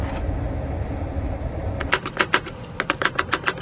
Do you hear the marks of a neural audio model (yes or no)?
no